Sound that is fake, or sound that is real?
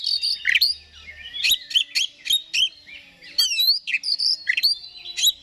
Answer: real